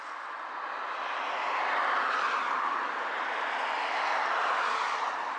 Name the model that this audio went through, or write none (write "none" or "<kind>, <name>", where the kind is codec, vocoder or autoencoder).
none